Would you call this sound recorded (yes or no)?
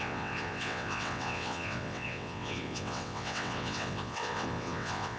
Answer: no